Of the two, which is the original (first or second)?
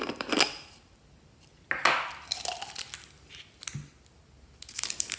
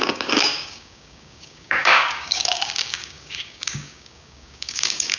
first